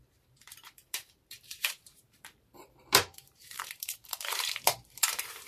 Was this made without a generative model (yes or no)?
no